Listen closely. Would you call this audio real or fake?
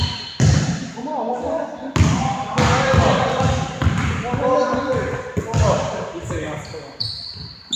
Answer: real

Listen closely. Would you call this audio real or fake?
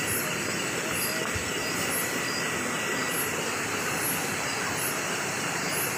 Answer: real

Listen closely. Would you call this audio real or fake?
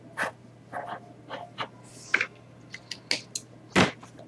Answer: real